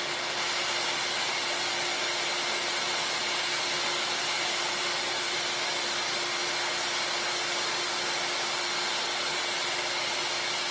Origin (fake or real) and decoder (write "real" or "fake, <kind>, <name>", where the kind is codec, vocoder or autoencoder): real